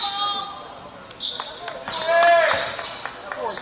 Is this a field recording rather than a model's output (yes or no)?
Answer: yes